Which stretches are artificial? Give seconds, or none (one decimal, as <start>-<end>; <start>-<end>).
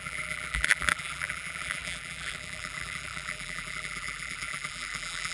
0.0-5.3